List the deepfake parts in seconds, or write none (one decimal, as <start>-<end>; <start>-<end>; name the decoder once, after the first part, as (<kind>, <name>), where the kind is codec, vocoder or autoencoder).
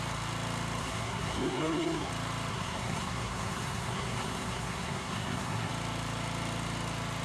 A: 0.8-2.1 (codec, SNAC); 2.5-5.7